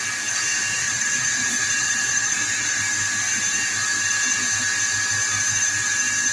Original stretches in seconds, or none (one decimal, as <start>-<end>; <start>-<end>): 0.0-0.8; 2.8-6.3